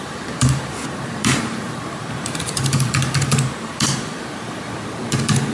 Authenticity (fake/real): fake